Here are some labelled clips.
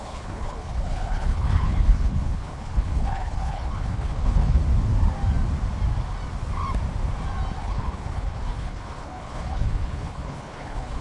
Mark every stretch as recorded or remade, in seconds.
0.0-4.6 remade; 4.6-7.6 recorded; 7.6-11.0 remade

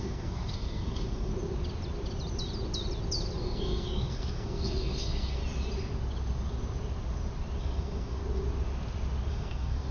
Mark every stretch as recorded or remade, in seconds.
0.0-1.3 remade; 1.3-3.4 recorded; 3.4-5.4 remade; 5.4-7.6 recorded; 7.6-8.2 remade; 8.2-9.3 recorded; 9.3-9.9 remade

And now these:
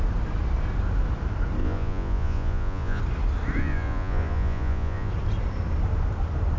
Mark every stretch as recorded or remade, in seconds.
0.0-1.6 recorded; 1.6-3.0 remade; 3.0-3.6 recorded; 3.6-5.1 remade; 5.1-6.6 recorded